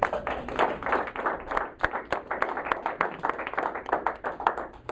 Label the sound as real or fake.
real